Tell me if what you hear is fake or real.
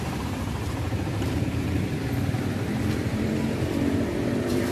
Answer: fake